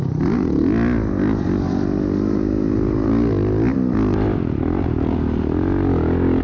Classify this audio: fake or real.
real